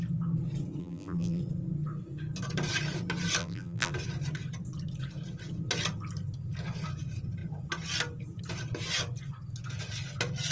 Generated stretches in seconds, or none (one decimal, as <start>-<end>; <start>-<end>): 0.8-1.4; 3.4-3.9